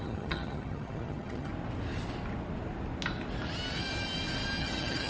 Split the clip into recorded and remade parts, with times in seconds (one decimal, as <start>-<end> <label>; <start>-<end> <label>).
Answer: 0.0-1.5 remade; 1.5-4.6 recorded; 4.6-5.1 remade